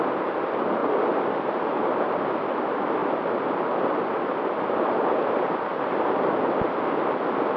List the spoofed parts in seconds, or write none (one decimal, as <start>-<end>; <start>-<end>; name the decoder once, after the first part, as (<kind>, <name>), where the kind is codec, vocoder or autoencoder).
none